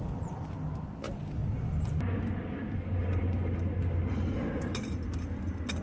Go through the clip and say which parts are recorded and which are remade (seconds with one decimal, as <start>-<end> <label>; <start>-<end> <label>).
0.0-5.8 recorded